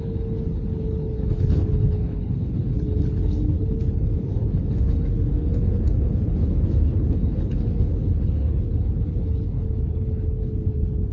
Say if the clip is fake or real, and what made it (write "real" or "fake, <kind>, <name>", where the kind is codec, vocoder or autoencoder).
fake, codec, HILCodec